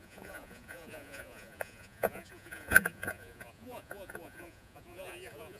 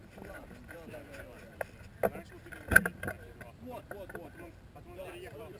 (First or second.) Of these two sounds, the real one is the second